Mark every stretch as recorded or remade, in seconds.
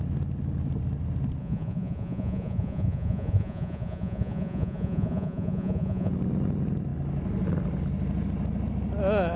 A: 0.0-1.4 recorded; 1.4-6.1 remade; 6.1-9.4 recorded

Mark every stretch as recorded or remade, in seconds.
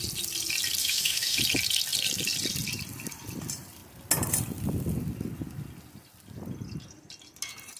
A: 0.0-0.8 recorded; 0.8-1.4 remade; 1.4-7.8 recorded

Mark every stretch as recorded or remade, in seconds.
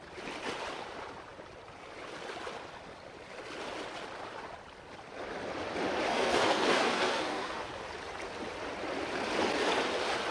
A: 0.0-6.1 recorded; 6.1-7.6 remade; 7.6-10.3 recorded